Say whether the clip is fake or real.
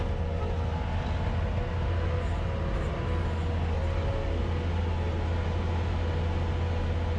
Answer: real